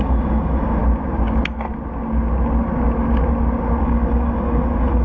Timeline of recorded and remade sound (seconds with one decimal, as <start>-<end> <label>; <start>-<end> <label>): 0.0-0.8 remade; 0.8-3.8 recorded; 3.8-5.0 remade